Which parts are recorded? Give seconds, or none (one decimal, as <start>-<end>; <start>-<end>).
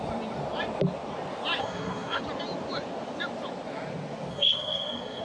0.0-1.6; 2.2-4.3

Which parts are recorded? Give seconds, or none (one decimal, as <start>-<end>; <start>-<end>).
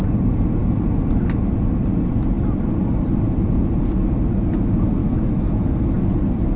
0.0-5.0; 5.6-6.6